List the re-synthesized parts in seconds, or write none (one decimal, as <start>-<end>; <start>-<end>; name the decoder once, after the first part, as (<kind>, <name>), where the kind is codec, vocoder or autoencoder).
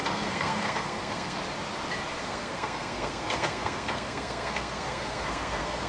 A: 0.0-1.4 (codec, SNAC); 2.2-5.9